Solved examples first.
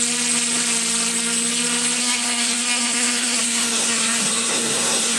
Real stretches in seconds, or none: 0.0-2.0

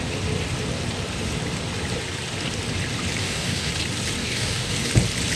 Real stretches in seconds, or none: 0.0-3.2; 3.7-4.2; 4.9-5.4

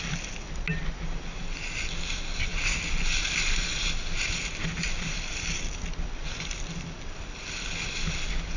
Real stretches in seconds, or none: 0.0-8.6

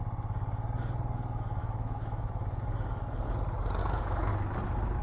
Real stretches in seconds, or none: 0.0-1.6; 2.6-3.8; 4.3-5.0

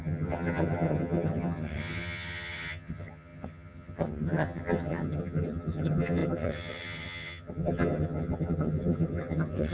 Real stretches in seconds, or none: none